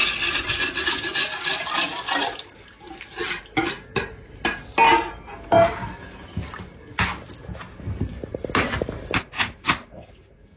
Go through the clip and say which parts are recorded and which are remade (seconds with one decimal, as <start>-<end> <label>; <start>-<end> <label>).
0.0-10.6 recorded